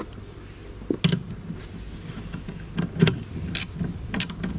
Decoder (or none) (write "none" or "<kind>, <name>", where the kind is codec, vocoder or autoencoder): none